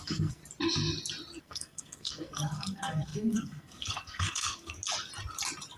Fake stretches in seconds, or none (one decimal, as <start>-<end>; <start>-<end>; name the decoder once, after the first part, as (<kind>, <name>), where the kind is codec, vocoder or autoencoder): 0.0-0.4 (codec, SNAC); 1.4-4.8